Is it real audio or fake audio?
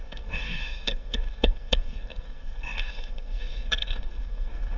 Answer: fake